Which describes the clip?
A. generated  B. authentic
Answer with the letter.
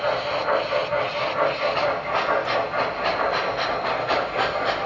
B